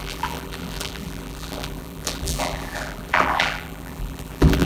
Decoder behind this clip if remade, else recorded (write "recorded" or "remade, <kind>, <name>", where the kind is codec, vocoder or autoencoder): remade, vocoder, BigVGAN v2